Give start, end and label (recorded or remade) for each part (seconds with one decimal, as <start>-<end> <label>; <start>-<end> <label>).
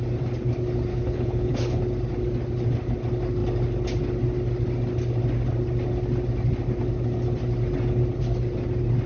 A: 0.0-0.9 recorded; 0.9-1.8 remade; 1.8-9.1 recorded